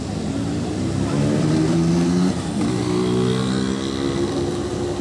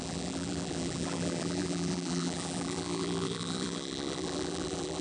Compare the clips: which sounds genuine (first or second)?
first